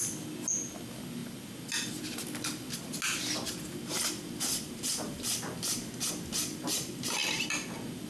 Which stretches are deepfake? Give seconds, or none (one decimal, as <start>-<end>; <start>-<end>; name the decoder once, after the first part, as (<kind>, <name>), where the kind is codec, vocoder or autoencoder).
none